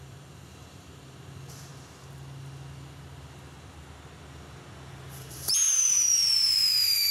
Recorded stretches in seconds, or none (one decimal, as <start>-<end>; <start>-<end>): 1.7-5.2